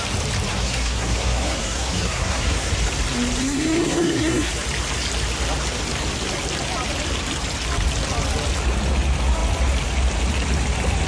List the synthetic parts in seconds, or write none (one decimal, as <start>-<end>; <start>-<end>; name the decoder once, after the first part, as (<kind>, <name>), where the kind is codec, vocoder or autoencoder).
0.5-2.7 (codec, SNAC); 3.4-4.5